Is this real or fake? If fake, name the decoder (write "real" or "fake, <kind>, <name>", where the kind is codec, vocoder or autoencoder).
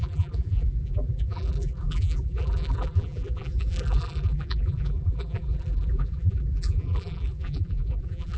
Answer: fake, vocoder, BigVGAN v2